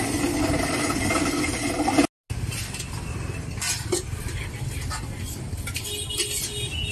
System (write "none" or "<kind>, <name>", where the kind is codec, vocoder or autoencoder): none